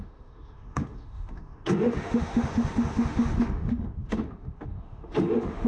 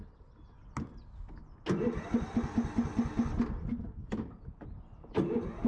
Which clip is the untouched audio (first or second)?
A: second